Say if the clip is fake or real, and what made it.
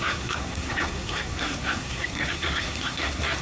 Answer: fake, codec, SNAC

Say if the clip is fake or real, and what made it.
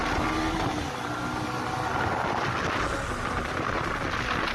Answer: real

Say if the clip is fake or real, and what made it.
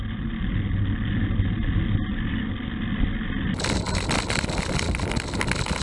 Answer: real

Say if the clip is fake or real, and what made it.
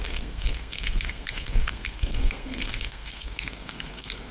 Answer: fake, codec, SNAC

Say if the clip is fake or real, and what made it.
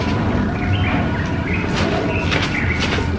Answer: real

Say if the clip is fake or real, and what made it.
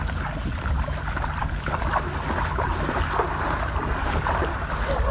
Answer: real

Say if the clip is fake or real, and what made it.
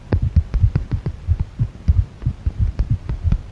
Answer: real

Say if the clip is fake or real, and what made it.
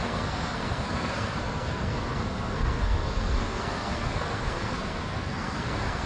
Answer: fake, codec, SNAC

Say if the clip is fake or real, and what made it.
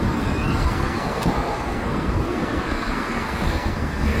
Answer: fake, codec, SNAC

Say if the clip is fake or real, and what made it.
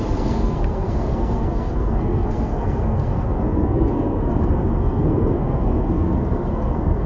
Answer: fake, codec, SNAC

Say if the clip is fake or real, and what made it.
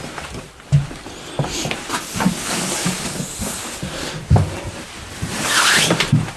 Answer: real